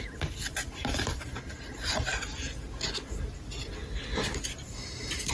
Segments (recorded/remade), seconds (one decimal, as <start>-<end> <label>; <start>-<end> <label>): 0.0-5.3 recorded